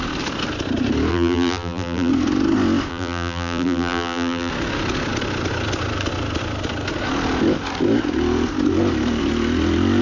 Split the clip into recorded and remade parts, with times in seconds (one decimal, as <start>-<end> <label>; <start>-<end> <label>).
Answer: 0.0-1.1 recorded; 1.1-2.1 remade; 2.1-2.9 recorded; 2.9-4.5 remade; 4.5-10.0 recorded